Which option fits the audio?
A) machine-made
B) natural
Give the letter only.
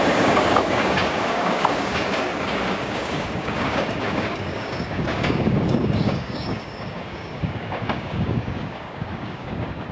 A